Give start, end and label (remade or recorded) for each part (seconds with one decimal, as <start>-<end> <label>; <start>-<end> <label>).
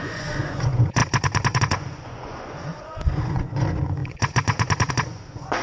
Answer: 0.0-5.6 remade